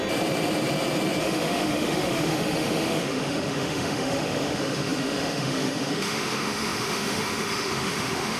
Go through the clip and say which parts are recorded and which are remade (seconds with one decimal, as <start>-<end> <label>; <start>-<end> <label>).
0.0-1.2 recorded; 1.2-8.4 remade